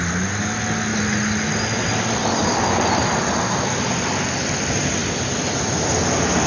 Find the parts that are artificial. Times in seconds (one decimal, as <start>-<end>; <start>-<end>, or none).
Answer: none